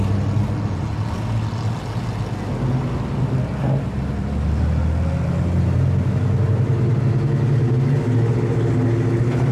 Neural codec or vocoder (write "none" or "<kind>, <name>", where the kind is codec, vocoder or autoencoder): none